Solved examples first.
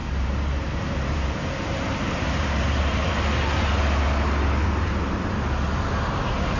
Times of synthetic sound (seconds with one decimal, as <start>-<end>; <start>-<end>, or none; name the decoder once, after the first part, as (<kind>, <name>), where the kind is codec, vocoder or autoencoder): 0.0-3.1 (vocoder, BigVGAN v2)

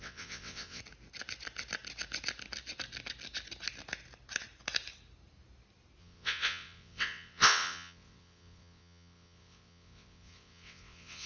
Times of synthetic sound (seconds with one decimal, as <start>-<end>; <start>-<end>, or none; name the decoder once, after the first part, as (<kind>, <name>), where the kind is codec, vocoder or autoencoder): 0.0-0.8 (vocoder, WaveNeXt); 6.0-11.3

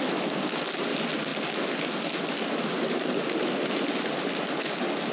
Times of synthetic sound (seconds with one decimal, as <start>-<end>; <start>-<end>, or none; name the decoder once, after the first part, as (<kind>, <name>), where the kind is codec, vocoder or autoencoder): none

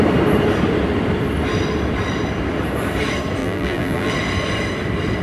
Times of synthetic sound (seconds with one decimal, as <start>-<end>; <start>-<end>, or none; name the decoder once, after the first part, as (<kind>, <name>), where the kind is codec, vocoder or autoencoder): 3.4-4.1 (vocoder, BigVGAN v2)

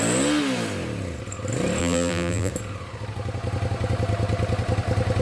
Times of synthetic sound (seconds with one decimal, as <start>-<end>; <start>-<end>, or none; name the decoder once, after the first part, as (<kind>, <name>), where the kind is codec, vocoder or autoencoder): 1.8-2.5 (vocoder, BigVGAN v2)